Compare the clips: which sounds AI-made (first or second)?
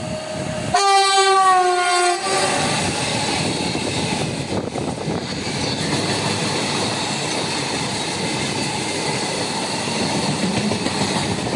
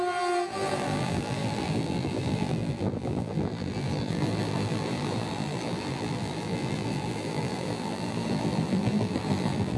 second